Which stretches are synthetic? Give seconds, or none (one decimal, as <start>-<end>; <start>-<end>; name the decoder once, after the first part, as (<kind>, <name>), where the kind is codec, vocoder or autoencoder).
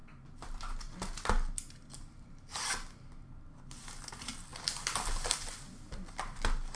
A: none